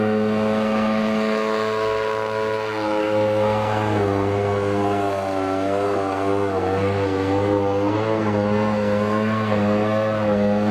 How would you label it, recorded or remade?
remade